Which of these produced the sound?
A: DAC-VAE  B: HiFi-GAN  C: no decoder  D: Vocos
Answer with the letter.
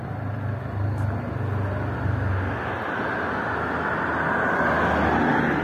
C